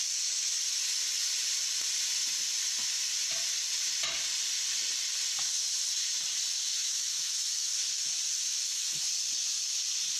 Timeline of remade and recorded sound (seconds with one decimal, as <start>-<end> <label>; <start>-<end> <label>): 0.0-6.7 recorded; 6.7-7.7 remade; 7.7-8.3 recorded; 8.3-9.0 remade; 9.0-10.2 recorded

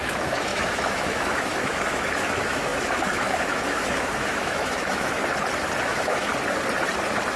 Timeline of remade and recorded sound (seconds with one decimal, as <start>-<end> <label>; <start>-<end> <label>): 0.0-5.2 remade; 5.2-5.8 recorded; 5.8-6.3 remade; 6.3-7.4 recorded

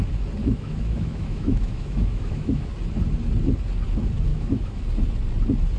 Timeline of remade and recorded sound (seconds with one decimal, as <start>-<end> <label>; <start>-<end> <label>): 0.0-0.4 recorded; 0.4-2.7 remade; 2.7-4.3 recorded; 4.3-4.8 remade; 4.8-5.8 recorded

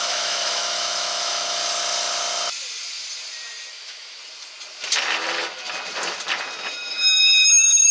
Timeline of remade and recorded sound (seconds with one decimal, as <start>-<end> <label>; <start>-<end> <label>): 0.0-1.6 remade; 1.6-3.7 recorded; 3.7-4.2 remade; 4.2-6.9 recorded; 6.9-7.9 remade

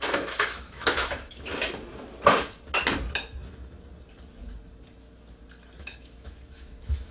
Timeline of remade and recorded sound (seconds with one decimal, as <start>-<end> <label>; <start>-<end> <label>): 0.0-1.5 remade; 1.5-5.8 recorded; 5.8-7.1 remade

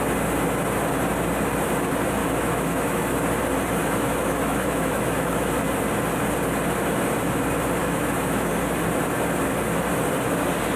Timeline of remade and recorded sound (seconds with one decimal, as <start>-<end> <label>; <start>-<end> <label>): 0.0-2.2 recorded; 2.2-3.1 remade; 3.1-3.8 recorded; 3.8-5.5 remade; 5.5-7.8 recorded; 7.8-8.5 remade; 8.5-10.8 recorded